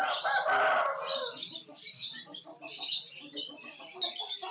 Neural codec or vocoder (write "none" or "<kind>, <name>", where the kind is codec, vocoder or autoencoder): none